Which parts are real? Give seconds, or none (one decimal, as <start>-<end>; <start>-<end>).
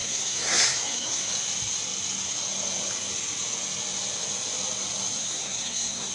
1.3-5.2